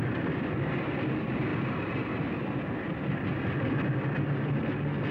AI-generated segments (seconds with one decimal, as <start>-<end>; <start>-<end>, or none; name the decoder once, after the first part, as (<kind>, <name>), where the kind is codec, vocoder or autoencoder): none